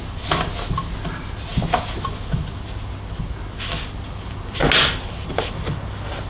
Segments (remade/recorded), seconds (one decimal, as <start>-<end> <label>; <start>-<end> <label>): 0.0-6.3 recorded